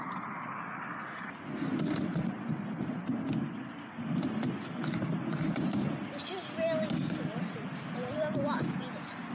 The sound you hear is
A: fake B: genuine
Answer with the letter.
B